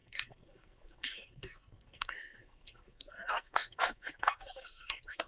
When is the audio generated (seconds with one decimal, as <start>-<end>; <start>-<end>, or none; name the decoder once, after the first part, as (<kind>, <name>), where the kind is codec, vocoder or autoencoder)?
0.0-5.3 (codec, SNAC)